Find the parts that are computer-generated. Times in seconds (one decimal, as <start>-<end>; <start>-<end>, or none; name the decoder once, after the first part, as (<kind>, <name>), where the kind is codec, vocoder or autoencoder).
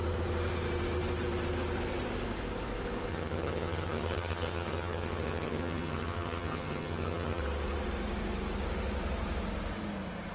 3.1-7.4 (vocoder, HiFi-GAN)